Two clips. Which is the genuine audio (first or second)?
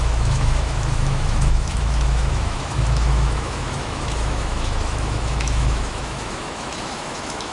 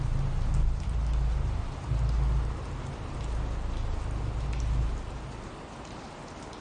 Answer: second